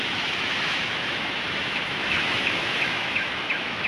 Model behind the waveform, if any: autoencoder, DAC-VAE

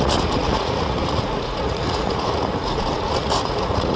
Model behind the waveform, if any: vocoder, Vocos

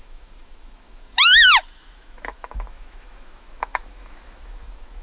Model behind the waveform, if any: autoencoder, DAC-VAE